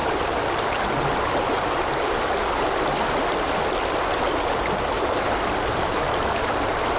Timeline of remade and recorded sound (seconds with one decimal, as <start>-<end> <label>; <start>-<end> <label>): 0.0-7.0 recorded